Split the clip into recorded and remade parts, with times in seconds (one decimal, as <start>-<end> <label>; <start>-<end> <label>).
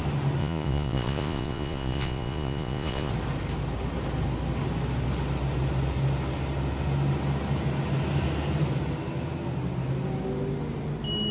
0.0-0.4 recorded; 0.4-3.1 remade; 3.1-11.3 recorded